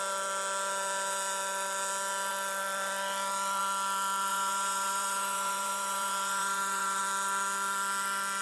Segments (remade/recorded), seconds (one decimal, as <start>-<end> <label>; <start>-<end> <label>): 0.0-4.3 recorded; 4.3-7.0 remade; 7.0-8.4 recorded